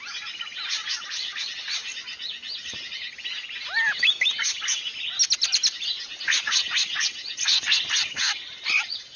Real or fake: real